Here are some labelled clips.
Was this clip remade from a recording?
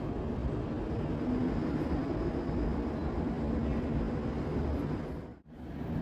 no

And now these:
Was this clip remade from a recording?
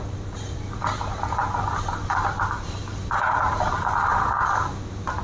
no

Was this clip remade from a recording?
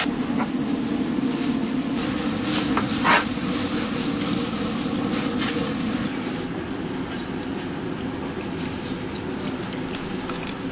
no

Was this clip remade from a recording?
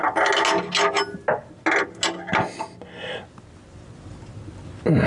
no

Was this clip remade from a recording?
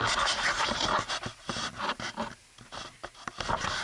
no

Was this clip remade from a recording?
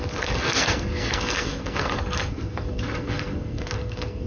yes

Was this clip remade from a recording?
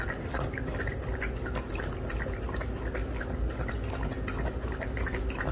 no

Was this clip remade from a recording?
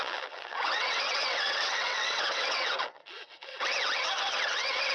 yes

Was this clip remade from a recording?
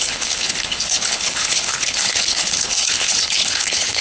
yes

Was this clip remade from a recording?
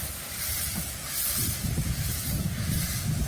yes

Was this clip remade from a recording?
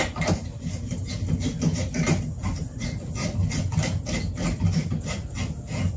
no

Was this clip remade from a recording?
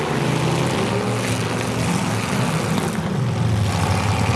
no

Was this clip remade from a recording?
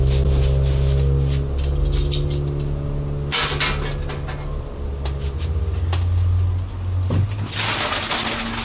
no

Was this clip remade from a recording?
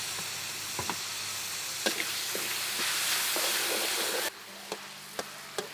no